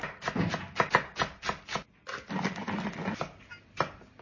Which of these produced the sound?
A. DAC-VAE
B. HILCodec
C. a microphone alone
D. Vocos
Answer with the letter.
C